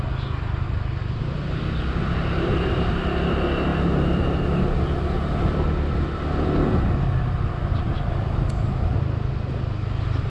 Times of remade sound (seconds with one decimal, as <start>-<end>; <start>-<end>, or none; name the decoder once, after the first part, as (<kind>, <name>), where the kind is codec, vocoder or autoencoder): 1.0-1.6 (vocoder, BigVGAN v2)